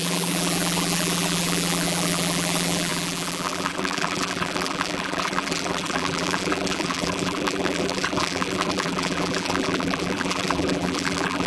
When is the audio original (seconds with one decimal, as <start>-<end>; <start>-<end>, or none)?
none